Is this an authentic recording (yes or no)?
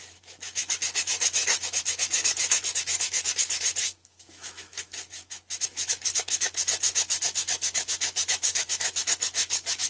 no